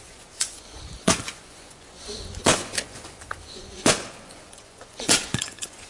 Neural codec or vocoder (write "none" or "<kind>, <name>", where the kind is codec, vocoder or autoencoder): vocoder, Vocos